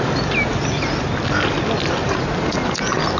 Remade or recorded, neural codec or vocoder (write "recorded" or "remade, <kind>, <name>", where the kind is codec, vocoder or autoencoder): recorded